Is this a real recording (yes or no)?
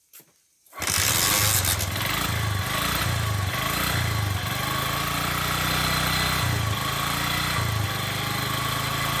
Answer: yes